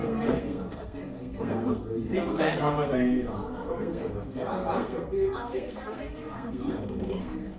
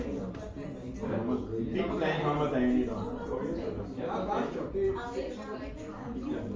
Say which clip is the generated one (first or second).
first